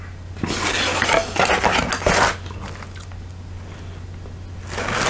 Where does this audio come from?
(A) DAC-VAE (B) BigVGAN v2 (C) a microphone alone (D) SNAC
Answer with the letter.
C